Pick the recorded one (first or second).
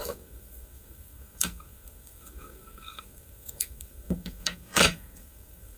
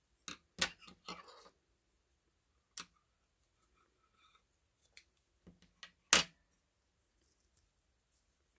second